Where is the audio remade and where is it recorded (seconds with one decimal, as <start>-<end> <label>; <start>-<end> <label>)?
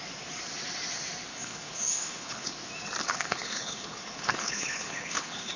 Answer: 0.0-1.3 recorded; 1.3-2.6 remade; 2.6-3.0 recorded; 3.0-5.6 remade